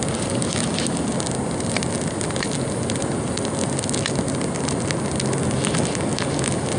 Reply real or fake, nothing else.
real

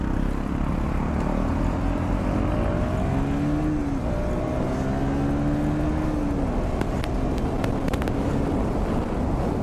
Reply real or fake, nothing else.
real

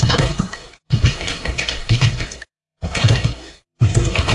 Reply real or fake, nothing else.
fake